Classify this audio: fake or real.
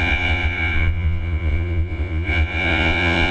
fake